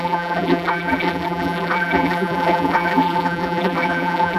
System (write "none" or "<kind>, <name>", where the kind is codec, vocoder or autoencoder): vocoder, BigVGAN v2